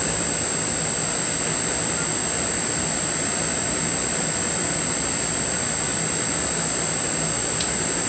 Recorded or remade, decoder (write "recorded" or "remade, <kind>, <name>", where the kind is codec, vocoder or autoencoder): recorded